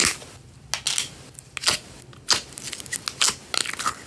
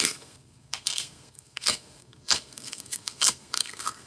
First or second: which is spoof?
second